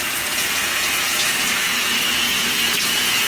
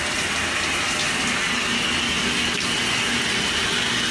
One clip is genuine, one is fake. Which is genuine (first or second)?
second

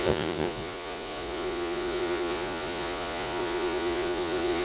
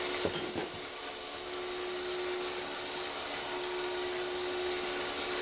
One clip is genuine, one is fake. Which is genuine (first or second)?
second